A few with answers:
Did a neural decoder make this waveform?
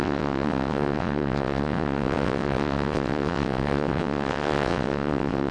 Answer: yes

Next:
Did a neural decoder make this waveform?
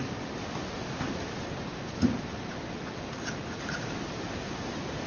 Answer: yes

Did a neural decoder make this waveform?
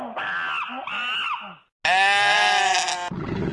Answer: no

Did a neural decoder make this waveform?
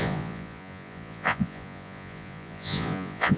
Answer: yes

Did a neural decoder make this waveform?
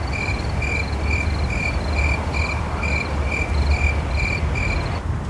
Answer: no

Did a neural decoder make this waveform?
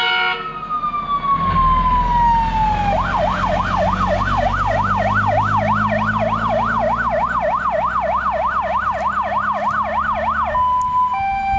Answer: no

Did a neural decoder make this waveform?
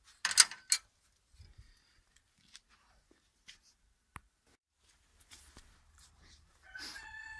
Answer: no